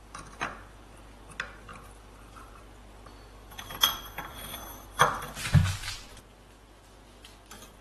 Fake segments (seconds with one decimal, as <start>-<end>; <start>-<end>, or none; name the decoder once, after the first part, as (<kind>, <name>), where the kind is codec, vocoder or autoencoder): 1.7-2.6 (vocoder, BigVGAN v2); 3.1-4.9